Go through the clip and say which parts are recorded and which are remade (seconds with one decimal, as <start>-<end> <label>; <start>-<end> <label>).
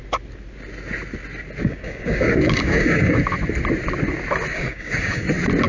0.0-1.6 recorded; 1.6-3.2 remade; 3.2-4.5 recorded; 4.5-5.3 remade; 5.3-5.7 recorded